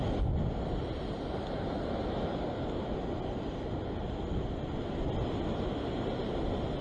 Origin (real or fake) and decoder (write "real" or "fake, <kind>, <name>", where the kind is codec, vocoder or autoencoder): real